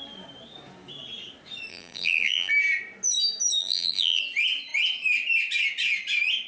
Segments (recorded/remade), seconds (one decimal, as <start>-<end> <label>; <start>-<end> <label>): 0.0-1.7 recorded; 1.7-2.5 remade; 2.5-3.6 recorded; 3.6-4.2 remade; 4.2-6.5 recorded